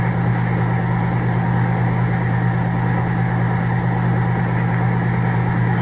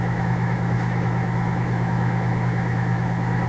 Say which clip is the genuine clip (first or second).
first